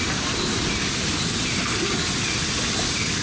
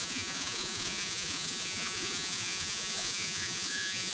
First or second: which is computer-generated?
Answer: second